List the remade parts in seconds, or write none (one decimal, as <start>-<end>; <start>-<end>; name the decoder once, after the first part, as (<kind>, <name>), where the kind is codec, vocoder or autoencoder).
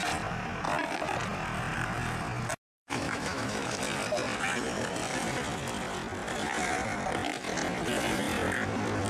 2.7-3.8 (autoencoder, DAC-VAE)